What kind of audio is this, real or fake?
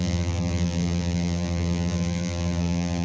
fake